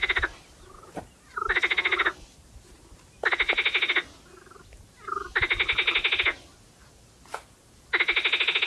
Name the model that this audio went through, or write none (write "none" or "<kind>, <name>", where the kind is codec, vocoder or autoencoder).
none